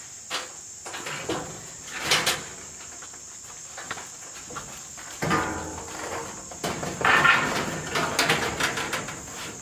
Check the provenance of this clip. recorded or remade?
recorded